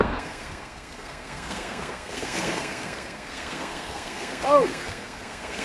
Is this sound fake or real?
fake